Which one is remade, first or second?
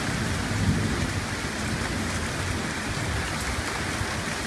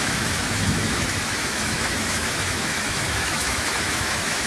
second